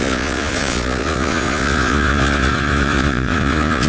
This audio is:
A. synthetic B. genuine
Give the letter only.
A